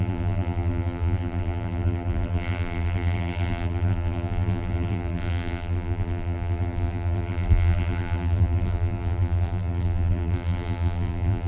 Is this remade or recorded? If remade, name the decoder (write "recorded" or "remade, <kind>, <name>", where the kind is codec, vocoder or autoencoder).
remade, vocoder, BigVGAN v2